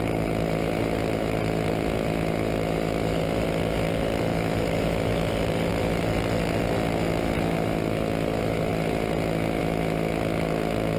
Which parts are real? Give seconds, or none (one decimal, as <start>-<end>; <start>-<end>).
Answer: 0.0-4.3; 5.3-11.0